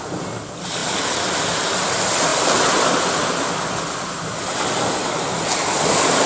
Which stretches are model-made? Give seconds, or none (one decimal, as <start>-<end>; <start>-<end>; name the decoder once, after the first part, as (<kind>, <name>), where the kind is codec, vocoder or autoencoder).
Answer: none